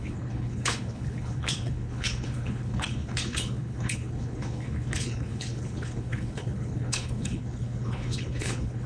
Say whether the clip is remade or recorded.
remade